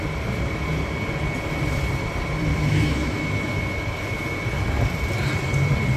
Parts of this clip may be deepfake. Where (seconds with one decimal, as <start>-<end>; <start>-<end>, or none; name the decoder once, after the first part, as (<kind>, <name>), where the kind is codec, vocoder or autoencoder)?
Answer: 2.5-3.6 (autoencoder, DAC-VAE)